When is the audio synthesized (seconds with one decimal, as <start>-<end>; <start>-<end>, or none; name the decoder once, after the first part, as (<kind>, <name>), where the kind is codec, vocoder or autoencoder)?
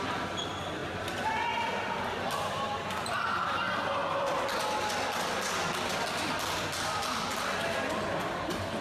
none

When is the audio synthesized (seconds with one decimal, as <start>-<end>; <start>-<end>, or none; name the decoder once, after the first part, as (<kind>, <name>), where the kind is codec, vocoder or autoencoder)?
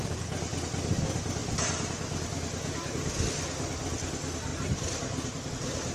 4.5-5.5 (vocoder, BigVGAN v2)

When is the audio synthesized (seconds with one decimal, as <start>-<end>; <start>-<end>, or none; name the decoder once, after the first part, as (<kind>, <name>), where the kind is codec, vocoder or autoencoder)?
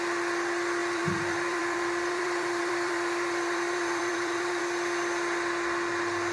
0.8-4.6 (vocoder, BigVGAN v2)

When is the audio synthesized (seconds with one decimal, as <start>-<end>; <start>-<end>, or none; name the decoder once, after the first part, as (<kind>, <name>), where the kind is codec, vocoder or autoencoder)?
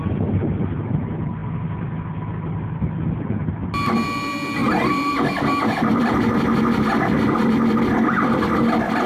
4.6-6.1 (vocoder, BigVGAN v2)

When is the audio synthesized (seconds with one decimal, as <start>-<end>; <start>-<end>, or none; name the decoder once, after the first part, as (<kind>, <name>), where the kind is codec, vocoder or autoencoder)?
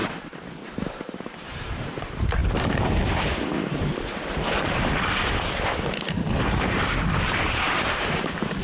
0.0-2.4 (vocoder, BigVGAN v2); 6.4-8.6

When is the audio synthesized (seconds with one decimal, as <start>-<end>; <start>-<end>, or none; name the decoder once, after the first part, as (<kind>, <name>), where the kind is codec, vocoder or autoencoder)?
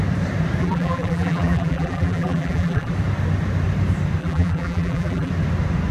0.6-2.9 (vocoder, BigVGAN v2); 4.2-5.3